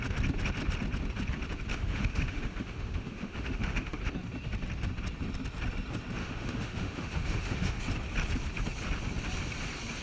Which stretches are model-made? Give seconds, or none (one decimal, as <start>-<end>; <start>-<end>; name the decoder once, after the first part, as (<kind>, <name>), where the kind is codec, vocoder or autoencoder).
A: 1.7-4.0 (autoencoder, DAC-VAE); 6.2-7.8